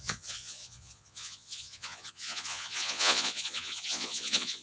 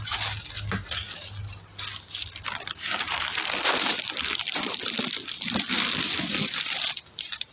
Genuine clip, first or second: second